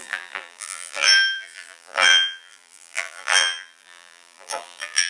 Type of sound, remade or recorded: remade